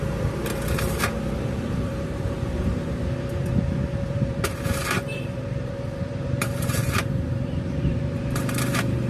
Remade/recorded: remade